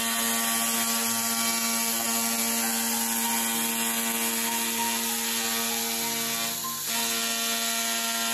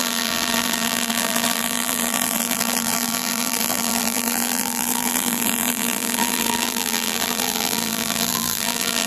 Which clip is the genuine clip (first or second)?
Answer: first